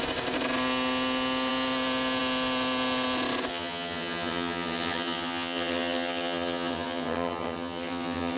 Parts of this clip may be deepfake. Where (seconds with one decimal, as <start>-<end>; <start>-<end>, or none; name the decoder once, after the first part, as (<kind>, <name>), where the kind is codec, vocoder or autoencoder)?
3.5-8.4 (vocoder, HiFi-GAN)

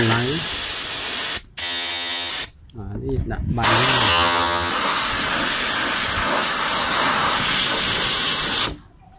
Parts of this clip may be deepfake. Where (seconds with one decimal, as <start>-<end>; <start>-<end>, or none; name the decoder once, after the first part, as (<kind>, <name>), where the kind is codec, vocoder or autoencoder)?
1.6-2.3 (vocoder, HiFi-GAN); 4.1-4.7

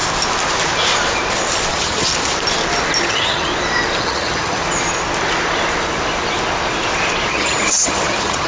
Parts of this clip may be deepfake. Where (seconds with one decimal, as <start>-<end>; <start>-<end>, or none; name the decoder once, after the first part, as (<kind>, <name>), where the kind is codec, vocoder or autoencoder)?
1.7-2.1 (vocoder, HiFi-GAN); 3.0-3.5; 4.0-4.6; 7.3-8.5

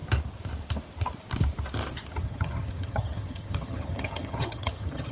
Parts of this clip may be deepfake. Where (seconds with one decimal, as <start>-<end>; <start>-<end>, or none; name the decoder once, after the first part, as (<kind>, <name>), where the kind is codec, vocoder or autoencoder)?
2.2-5.1 (vocoder, HiFi-GAN)

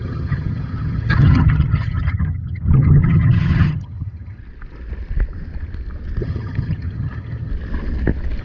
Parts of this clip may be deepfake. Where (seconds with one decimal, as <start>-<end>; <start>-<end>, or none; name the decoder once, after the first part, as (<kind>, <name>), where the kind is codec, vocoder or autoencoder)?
0.0-4.4 (vocoder, HiFi-GAN); 6.2-7.5